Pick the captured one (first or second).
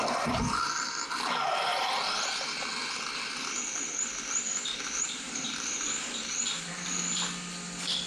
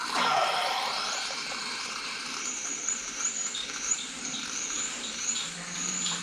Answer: first